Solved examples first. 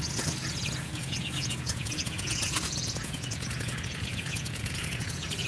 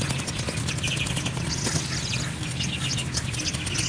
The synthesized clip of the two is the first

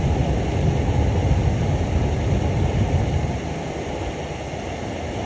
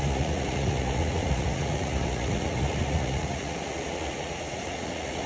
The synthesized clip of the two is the second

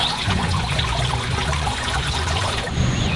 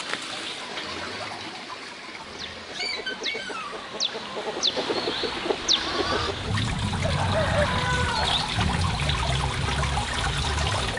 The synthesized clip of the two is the first